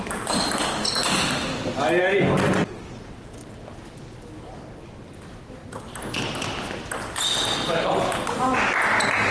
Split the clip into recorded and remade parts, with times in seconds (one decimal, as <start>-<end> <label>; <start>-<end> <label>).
0.0-9.3 recorded